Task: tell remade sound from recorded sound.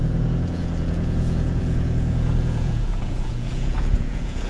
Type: remade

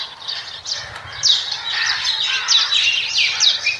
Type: recorded